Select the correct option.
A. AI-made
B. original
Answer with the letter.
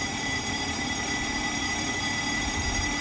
A